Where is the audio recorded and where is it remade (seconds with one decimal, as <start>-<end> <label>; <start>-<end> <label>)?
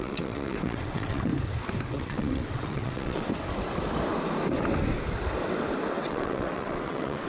0.0-1.3 remade; 1.3-1.9 recorded; 1.9-3.3 remade; 3.3-5.9 recorded; 5.9-7.3 remade